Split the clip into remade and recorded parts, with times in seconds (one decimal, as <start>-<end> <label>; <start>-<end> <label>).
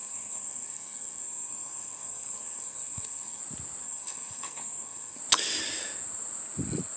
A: 0.0-3.4 remade; 3.4-3.8 recorded; 3.8-5.2 remade; 5.2-7.0 recorded